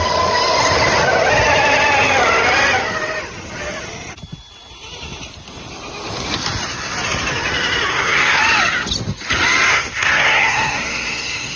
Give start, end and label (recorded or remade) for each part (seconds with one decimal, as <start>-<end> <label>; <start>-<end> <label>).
0.0-7.9 recorded; 7.9-8.4 remade; 8.4-9.7 recorded; 9.7-11.6 remade